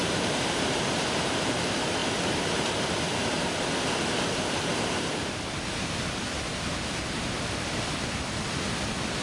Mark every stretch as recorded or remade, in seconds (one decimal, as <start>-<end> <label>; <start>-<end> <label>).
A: 0.0-1.5 remade; 1.5-9.2 recorded